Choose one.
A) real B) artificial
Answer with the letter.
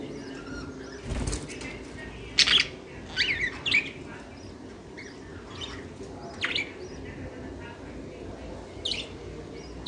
A